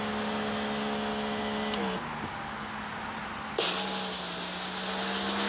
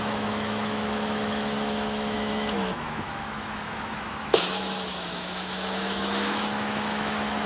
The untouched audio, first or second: first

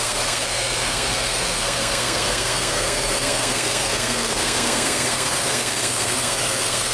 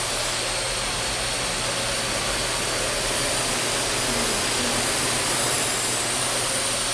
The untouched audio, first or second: second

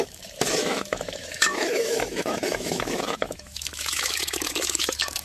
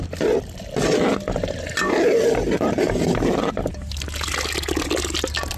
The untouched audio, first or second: second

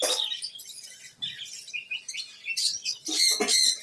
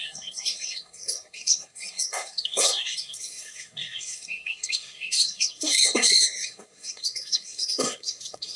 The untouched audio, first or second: first